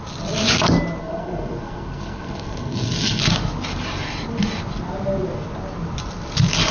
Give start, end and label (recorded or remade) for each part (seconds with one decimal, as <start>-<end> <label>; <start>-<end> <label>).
0.0-1.0 recorded; 1.0-3.2 remade; 3.2-6.7 recorded